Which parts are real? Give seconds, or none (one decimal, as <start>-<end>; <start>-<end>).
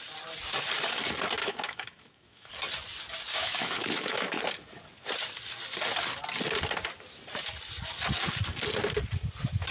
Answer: 0.0-1.4; 2.5-3.3; 4.4-9.7